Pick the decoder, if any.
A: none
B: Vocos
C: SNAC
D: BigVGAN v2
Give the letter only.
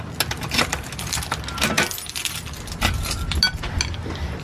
A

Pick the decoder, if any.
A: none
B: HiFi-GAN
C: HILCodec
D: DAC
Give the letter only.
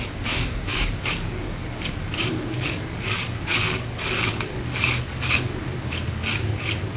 D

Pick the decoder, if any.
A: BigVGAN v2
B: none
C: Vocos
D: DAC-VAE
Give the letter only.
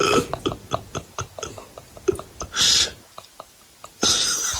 B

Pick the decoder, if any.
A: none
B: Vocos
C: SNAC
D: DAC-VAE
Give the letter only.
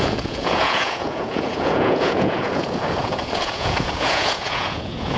B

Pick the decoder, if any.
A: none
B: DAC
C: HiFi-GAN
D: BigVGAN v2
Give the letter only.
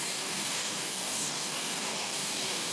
B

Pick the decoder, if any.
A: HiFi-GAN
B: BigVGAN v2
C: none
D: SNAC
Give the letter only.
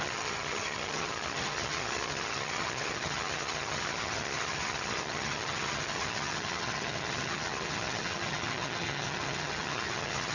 A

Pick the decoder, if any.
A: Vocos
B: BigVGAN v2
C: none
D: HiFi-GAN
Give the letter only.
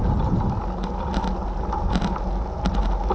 C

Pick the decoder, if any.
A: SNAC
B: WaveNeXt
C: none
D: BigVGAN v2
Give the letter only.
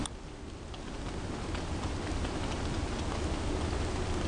C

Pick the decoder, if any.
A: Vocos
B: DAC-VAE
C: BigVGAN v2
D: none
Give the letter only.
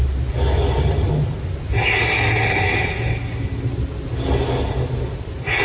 D